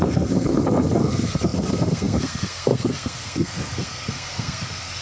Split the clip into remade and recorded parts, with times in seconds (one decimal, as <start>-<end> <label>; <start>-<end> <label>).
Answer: 0.0-5.0 remade

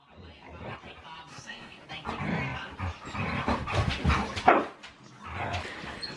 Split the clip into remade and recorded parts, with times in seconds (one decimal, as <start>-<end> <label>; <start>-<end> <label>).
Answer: 0.0-1.3 recorded; 1.3-1.8 remade; 1.8-6.2 recorded

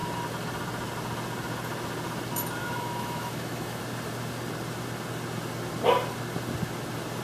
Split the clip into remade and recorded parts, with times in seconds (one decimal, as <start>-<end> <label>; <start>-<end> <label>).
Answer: 0.0-2.6 recorded; 2.6-3.8 remade; 3.8-7.2 recorded

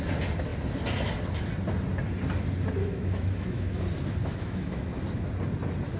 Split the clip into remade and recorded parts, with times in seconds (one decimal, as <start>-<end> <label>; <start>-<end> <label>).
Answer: 0.0-2.8 recorded; 2.8-3.8 remade; 3.8-4.2 recorded; 4.2-4.9 remade; 4.9-6.0 recorded

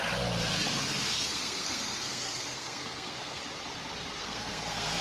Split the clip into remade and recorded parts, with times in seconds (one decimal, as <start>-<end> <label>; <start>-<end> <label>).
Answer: 0.0-0.8 recorded; 0.8-3.4 remade; 3.4-4.2 recorded; 4.2-5.0 remade

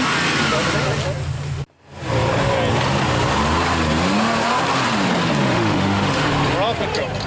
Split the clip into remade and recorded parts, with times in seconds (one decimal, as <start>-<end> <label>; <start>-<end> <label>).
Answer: 0.0-5.4 recorded; 5.4-6.3 remade; 6.3-7.3 recorded